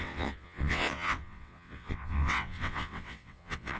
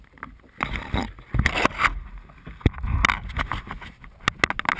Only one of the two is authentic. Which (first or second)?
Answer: second